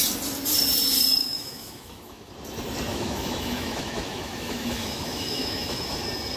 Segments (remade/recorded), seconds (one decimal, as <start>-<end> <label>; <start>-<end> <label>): 0.0-1.2 recorded; 1.2-2.3 remade; 2.3-2.9 recorded; 2.9-6.0 remade; 6.0-6.4 recorded